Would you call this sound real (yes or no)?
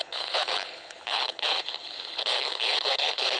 no